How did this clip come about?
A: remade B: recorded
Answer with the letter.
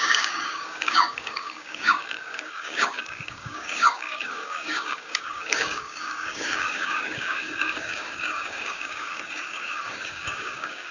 A